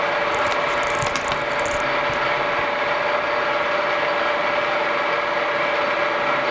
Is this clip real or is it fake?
real